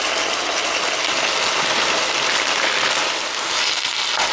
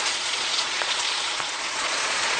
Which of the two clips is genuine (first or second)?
first